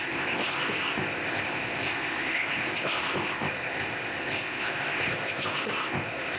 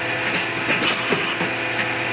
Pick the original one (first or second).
second